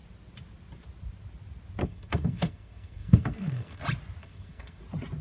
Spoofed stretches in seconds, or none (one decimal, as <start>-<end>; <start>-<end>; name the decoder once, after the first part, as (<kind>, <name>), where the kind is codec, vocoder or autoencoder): 1.8-3.8 (codec, SNAC); 4.2-4.8